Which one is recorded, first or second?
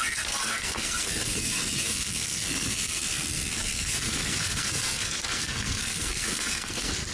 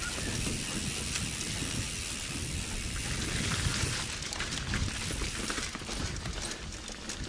second